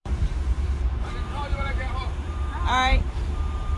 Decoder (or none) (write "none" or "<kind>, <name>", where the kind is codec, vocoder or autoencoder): vocoder, BigVGAN v2